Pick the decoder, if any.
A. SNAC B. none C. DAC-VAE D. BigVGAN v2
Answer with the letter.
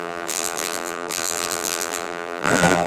D